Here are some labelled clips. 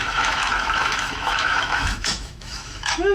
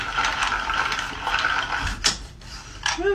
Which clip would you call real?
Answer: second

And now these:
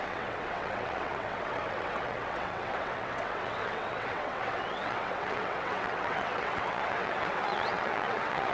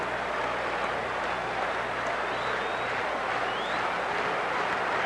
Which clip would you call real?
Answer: second